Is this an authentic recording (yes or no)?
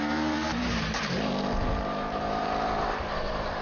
no